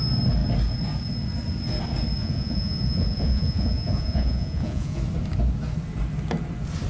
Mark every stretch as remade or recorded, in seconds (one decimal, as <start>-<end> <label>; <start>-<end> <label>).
0.0-2.2 recorded; 2.2-5.0 remade; 5.0-6.9 recorded